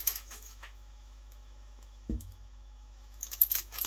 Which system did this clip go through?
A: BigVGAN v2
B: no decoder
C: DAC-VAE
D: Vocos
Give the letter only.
C